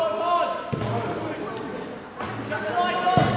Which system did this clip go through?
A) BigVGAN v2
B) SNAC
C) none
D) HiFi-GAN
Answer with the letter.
C